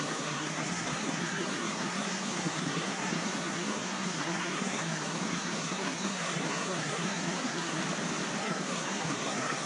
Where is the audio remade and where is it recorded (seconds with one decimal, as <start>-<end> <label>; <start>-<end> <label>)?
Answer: 0.0-7.8 remade; 7.8-8.4 recorded; 8.4-9.7 remade